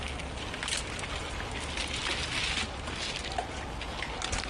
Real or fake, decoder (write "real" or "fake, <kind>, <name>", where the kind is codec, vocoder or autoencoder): real